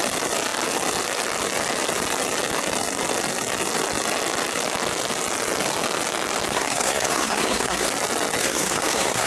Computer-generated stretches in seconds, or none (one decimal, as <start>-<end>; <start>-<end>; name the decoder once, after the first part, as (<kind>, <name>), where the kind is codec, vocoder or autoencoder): 6.5-7.9 (codec, SNAC); 8.4-9.3